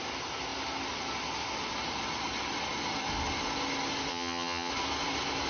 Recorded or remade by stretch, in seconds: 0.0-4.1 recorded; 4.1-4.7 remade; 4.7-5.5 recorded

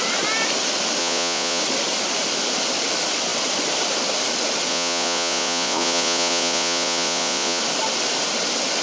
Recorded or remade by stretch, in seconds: 0.0-1.0 recorded; 1.0-1.6 remade; 1.6-4.7 recorded; 4.7-7.6 remade; 7.6-8.8 recorded

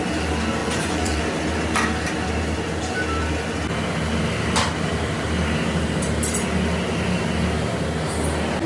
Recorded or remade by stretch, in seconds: 0.0-0.6 recorded; 0.6-1.2 remade; 1.2-8.7 recorded

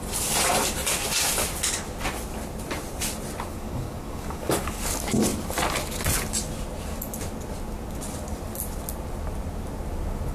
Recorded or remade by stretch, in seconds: 0.0-3.5 recorded; 3.5-4.8 remade; 4.8-10.3 recorded